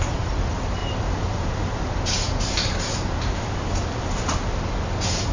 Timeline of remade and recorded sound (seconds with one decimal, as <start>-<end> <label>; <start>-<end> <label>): 0.0-5.3 recorded

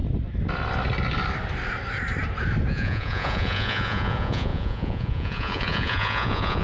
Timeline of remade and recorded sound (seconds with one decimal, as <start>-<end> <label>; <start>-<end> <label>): 0.0-2.7 recorded; 2.7-6.6 remade

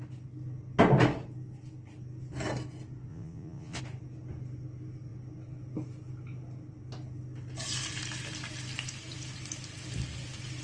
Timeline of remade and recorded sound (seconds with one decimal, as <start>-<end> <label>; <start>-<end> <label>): 0.0-3.1 recorded; 3.1-3.8 remade; 3.8-10.6 recorded

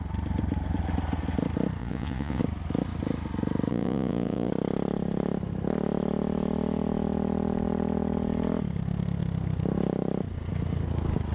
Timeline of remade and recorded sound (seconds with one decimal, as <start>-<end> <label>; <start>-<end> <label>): 0.0-1.8 recorded; 1.8-2.4 remade; 2.4-3.7 recorded; 3.7-4.5 remade; 4.5-11.3 recorded

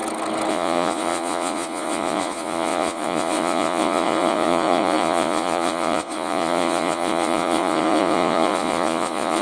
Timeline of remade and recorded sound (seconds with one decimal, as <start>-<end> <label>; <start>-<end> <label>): 0.0-0.5 recorded; 0.5-9.4 remade

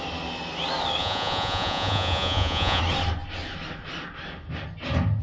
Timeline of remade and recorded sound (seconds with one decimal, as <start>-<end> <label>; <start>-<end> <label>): 0.0-1.0 recorded; 1.0-2.8 remade; 2.8-5.2 recorded